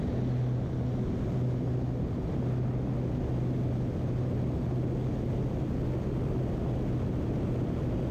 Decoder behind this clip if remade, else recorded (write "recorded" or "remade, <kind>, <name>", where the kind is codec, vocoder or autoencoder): recorded